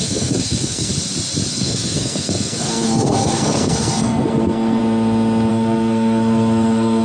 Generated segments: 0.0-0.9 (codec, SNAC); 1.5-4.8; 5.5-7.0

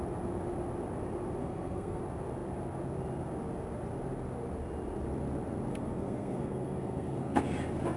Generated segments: 1.4-2.0 (codec, SNAC); 5.7-7.4

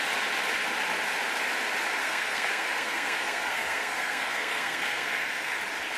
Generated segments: 2.0-5.6 (codec, SNAC)

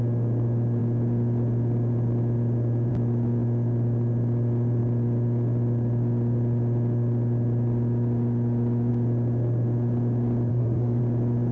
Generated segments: 10.5-11.0 (codec, SNAC)

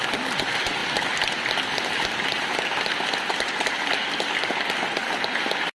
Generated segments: none